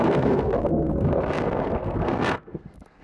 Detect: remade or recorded remade